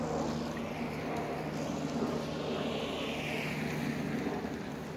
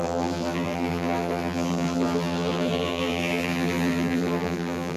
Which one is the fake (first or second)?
second